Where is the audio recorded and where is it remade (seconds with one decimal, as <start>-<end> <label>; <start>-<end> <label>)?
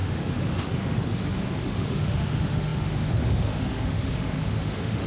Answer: 0.0-5.1 remade